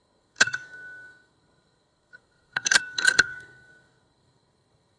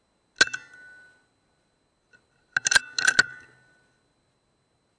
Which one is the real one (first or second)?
second